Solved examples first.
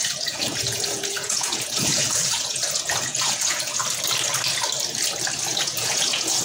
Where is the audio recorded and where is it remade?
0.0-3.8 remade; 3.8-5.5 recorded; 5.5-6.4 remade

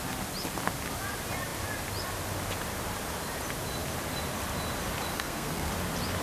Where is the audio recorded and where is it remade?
0.0-5.1 recorded; 5.1-5.7 remade; 5.7-6.2 recorded